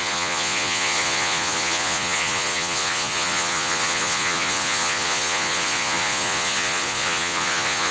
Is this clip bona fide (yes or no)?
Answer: no